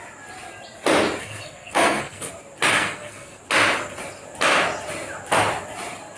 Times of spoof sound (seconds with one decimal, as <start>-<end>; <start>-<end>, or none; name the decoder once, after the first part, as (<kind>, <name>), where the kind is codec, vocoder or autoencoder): 1.2-2.3 (codec, SNAC); 2.7-3.4